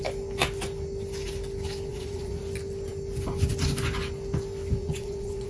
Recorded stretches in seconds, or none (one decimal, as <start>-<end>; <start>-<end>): 0.0-1.9; 2.4-4.8